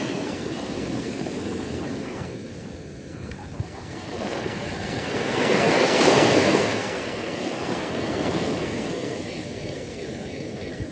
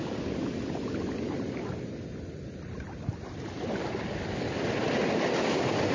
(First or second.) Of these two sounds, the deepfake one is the first